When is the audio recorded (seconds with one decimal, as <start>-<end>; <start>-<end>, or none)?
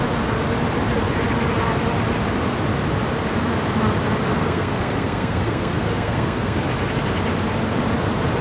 0.0-4.3; 6.6-8.4